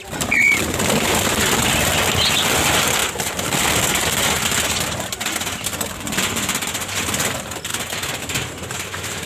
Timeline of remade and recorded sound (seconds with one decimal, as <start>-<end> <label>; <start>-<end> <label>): 0.0-7.7 recorded; 7.7-8.2 remade; 8.2-9.3 recorded